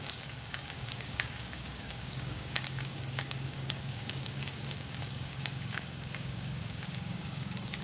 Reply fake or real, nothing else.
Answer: fake